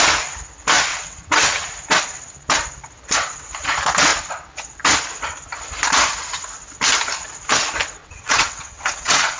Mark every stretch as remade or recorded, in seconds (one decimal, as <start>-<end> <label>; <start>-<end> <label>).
0.0-0.9 recorded; 0.9-1.6 remade; 1.6-8.0 recorded; 8.0-9.4 remade